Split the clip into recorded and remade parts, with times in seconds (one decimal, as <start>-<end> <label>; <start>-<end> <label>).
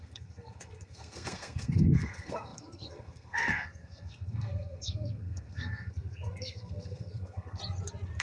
0.0-7.6 remade; 7.6-8.2 recorded